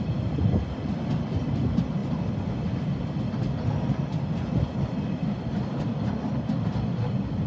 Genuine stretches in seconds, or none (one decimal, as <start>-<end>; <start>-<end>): 0.0-7.5